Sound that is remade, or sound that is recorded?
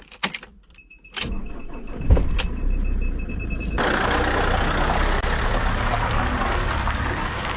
recorded